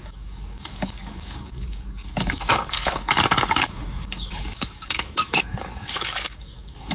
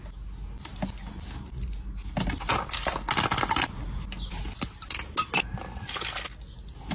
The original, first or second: second